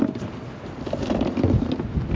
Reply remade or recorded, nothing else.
recorded